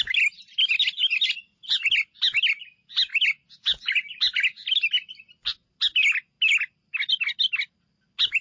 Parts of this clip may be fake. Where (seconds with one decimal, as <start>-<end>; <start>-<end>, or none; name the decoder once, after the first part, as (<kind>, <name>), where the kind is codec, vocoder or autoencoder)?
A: none